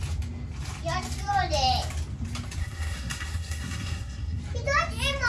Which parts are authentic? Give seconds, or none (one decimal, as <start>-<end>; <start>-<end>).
0.0-2.6; 4.4-5.3